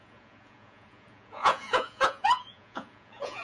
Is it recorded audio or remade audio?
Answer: remade